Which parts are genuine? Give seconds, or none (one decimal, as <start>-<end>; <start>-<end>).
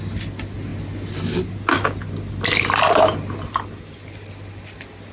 0.0-5.1